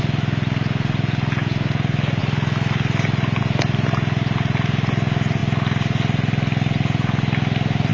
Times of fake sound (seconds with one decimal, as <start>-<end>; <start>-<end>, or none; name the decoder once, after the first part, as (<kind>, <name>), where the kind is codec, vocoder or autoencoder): none